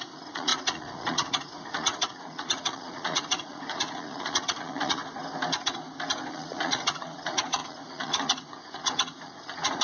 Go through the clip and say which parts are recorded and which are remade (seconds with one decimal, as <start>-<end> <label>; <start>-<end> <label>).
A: 0.0-5.0 remade; 5.0-6.3 recorded; 6.3-9.8 remade